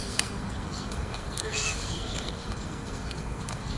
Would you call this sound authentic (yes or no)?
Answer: no